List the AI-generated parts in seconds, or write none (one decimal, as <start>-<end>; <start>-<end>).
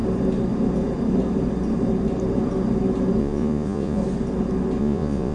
3.2-4.0; 4.8-5.3